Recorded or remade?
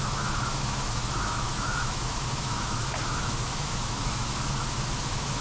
remade